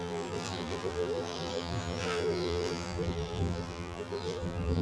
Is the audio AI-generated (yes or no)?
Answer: yes